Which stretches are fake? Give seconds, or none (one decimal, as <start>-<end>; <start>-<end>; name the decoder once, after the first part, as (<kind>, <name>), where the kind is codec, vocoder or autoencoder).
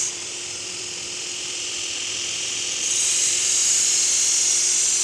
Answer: 0.0-3.6 (vocoder, BigVGAN v2)